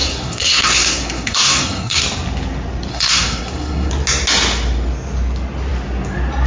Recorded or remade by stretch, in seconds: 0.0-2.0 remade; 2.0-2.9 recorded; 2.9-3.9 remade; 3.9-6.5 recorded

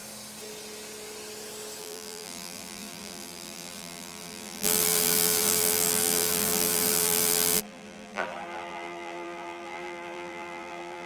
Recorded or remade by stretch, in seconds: 0.0-1.8 recorded; 1.8-11.1 remade

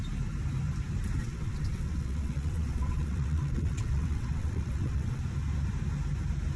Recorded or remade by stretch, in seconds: 0.0-1.2 recorded; 1.2-5.2 remade; 5.2-6.6 recorded